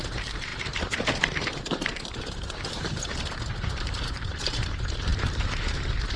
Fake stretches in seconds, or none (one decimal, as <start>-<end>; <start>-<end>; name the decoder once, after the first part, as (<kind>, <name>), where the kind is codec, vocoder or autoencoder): 0.0-6.2 (vocoder, BigVGAN v2)